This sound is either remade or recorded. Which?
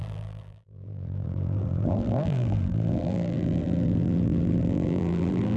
remade